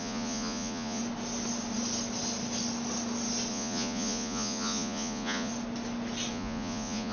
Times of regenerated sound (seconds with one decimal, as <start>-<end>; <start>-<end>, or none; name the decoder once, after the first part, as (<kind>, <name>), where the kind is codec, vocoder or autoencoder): 0.0-1.0 (vocoder, Vocos); 3.5-5.5; 6.3-7.1